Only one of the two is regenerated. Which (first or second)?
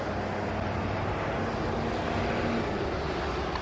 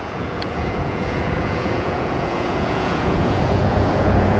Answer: second